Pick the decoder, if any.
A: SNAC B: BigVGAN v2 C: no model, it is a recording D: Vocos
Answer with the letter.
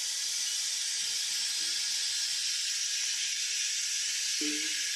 C